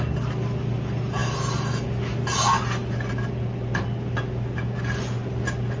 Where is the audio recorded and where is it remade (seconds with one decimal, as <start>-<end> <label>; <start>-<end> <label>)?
0.0-5.8 recorded